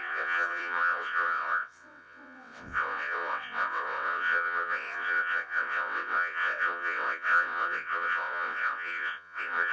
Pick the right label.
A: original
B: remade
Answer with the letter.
B